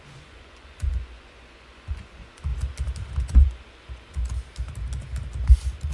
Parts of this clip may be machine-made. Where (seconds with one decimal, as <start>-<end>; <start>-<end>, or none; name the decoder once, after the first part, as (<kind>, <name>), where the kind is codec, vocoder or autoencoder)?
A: 0.0-2.5 (vocoder, Vocos); 3.2-4.2